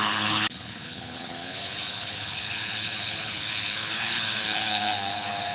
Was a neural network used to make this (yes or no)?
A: yes